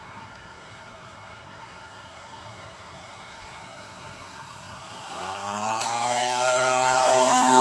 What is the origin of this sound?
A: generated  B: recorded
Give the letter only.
A